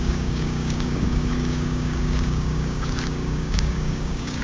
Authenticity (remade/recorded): remade